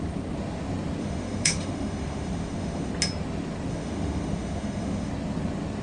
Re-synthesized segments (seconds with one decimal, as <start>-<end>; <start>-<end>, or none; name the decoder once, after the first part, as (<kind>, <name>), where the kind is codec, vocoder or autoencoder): 1.0-2.9 (autoencoder, DAC-VAE); 3.7-5.1